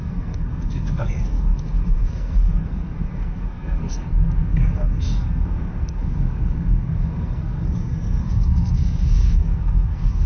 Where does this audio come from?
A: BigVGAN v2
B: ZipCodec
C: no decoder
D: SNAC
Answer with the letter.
D